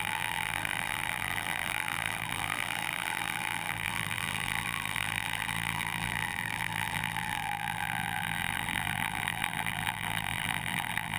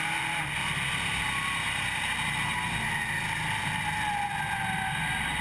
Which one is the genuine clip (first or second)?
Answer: second